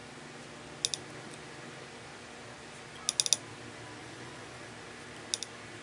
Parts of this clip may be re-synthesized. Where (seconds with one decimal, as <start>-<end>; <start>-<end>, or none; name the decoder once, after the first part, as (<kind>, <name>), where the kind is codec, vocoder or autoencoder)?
4.0-4.7 (vocoder, Vocos)